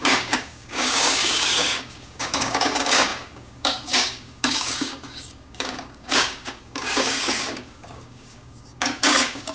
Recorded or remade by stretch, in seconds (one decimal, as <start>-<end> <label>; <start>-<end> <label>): 0.0-9.5 remade